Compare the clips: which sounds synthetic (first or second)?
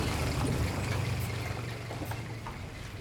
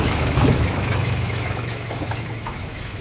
second